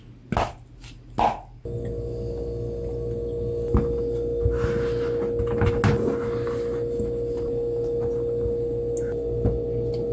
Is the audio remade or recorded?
recorded